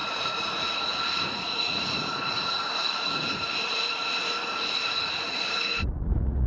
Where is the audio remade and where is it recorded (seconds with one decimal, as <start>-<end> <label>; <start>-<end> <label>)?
0.0-6.5 remade